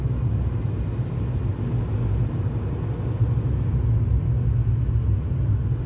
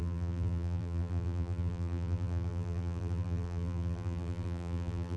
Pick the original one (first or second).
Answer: first